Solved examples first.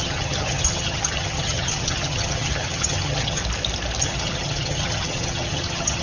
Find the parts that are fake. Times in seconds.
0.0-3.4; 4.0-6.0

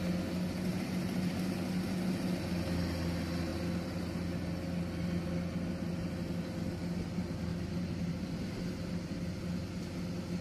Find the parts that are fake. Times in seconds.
0.7-1.3; 7.5-8.1